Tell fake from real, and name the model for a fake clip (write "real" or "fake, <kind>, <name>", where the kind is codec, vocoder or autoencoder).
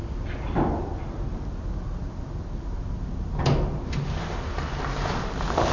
real